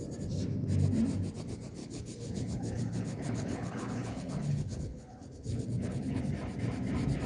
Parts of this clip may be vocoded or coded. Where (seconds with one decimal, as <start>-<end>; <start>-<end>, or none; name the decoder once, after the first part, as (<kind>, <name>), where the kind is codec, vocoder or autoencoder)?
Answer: 1.8-6.2 (codec, HILCodec)